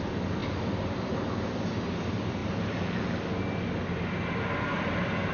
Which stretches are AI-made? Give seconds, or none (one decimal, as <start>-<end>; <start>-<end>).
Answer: none